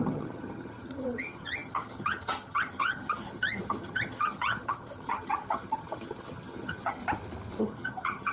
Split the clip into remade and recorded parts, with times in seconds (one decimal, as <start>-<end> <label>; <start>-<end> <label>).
0.0-7.0 remade; 7.0-7.6 recorded; 7.6-8.3 remade